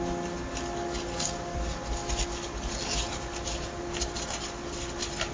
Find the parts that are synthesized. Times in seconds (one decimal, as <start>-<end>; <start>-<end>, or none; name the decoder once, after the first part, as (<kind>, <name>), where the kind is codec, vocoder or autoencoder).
none